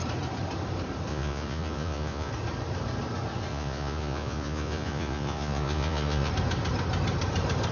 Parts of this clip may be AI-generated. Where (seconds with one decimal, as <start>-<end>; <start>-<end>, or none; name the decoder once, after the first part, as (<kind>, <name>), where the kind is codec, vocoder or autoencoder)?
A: 1.1-2.3 (vocoder, Vocos); 3.5-6.3